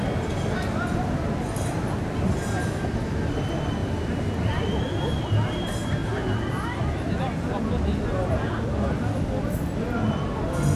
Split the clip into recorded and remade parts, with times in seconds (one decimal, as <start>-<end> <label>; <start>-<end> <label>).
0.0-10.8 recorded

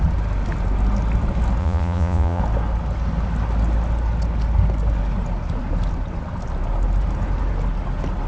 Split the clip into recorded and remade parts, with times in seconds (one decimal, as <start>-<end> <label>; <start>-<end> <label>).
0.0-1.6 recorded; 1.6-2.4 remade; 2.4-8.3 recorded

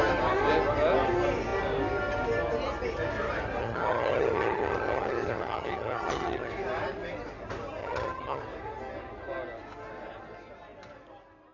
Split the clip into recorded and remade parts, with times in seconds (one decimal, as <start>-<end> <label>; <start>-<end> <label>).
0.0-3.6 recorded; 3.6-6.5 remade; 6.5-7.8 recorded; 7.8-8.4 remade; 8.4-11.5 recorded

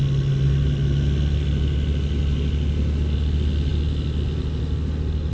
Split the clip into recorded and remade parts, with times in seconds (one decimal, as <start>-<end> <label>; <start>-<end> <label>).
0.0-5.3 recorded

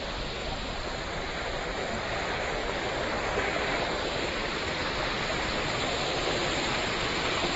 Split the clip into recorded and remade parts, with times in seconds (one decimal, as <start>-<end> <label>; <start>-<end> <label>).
0.0-0.4 recorded; 0.4-1.3 remade; 1.3-2.6 recorded; 2.6-5.0 remade; 5.0-7.6 recorded

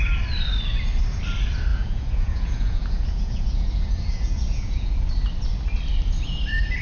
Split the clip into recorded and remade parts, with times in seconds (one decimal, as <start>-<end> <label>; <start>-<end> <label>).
0.0-1.7 recorded; 1.7-5.1 remade; 5.1-6.8 recorded

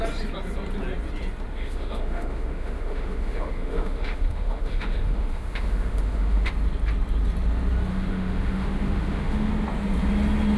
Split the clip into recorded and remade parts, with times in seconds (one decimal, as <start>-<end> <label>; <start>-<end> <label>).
0.0-1.5 recorded; 1.5-6.5 remade; 6.5-7.9 recorded; 7.9-9.5 remade; 9.5-10.6 recorded